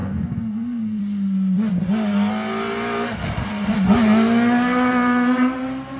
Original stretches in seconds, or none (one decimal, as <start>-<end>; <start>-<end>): 1.0-6.0